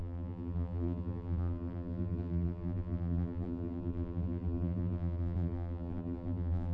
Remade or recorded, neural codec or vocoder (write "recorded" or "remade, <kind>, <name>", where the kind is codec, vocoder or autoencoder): remade, vocoder, BigVGAN v2